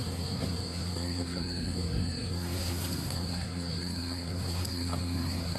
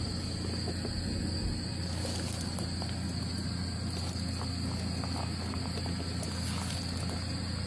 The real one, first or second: second